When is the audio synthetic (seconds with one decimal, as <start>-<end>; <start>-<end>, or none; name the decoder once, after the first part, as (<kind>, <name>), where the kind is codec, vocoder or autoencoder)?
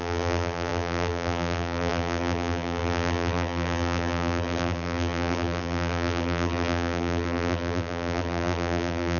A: 0.0-9.2 (vocoder, BigVGAN v2)